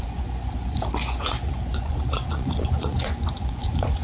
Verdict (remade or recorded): remade